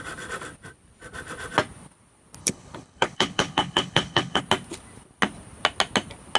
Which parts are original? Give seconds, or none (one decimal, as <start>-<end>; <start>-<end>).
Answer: 0.0-2.4; 4.4-6.4